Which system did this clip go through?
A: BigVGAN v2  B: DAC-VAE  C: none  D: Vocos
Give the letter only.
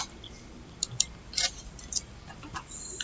A